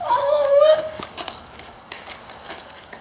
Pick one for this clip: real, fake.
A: fake